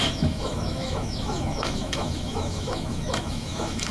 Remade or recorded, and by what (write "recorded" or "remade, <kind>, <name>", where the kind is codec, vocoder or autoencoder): remade, autoencoder, DAC-VAE